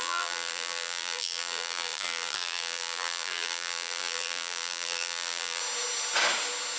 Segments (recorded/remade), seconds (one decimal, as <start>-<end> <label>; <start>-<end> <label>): 0.0-5.6 remade; 5.6-6.8 recorded